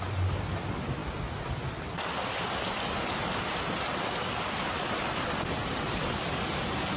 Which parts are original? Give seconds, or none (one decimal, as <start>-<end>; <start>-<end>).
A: 0.0-7.0

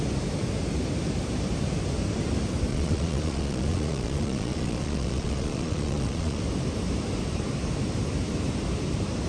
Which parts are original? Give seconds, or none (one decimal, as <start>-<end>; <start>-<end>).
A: 0.0-2.7; 6.4-9.3

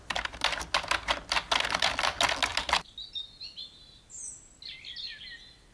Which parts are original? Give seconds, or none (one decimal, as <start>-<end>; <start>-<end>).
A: 0.0-5.7

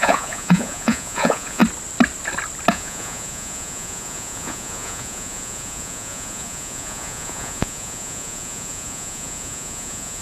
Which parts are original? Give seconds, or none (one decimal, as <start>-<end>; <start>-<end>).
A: 1.6-2.7

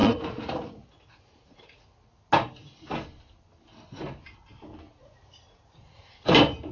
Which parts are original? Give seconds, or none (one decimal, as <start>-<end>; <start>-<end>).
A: 1.8-5.0; 6.3-6.7

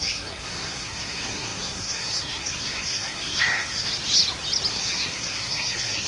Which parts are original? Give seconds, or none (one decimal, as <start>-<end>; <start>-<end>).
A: 3.9-4.7

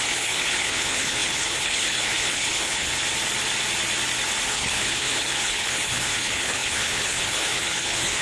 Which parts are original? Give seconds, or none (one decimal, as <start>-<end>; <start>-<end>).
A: 2.9-4.5